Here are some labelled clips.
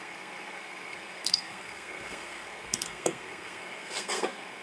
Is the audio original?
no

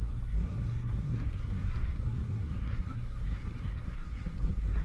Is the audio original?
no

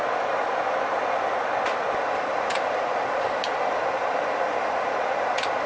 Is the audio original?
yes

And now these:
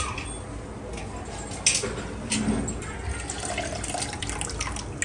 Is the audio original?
yes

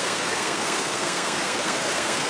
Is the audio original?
no